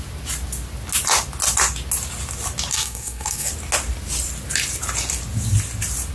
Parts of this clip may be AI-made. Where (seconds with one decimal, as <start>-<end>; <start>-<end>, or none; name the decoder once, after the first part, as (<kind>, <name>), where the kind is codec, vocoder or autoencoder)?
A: 2.7-3.5 (codec, SNAC)